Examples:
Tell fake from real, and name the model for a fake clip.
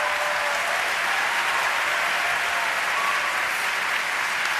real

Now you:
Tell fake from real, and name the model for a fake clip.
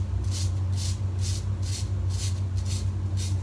real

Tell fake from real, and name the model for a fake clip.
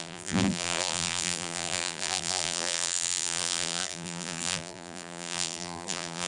fake, vocoder, BigVGAN v2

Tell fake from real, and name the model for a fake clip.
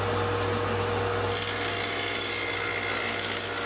real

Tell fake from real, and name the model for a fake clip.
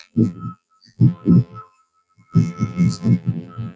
fake, vocoder, BigVGAN v2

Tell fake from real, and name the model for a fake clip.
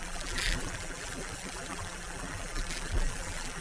fake, vocoder, BigVGAN v2